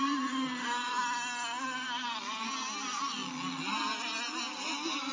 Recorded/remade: recorded